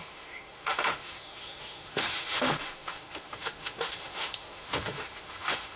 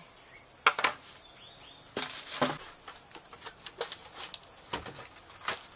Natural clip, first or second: second